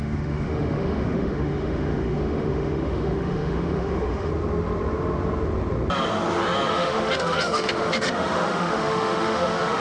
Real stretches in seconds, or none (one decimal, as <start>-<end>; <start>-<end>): 4.3-6.7